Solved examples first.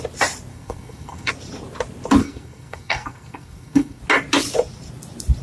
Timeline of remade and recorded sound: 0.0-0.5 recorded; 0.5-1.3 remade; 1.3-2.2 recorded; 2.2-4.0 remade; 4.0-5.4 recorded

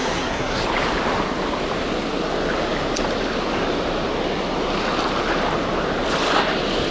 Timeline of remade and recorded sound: 0.0-0.6 remade; 0.6-6.9 recorded

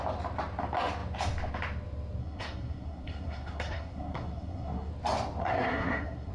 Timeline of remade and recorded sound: 0.0-2.2 recorded; 2.2-4.9 remade; 4.9-5.4 recorded; 5.4-6.3 remade

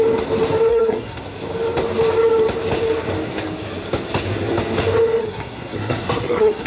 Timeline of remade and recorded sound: 0.0-0.7 recorded; 0.7-1.2 remade; 1.2-5.2 recorded; 5.2-6.7 remade

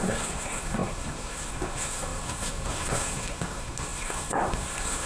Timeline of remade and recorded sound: 0.0-5.1 remade

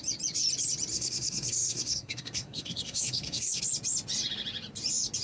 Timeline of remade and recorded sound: 0.0-0.9 recorded; 0.9-3.6 remade; 3.6-5.2 recorded

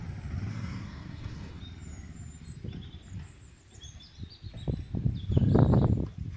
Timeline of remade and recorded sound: 0.0-0.5 recorded; 0.5-1.6 remade; 1.6-6.4 recorded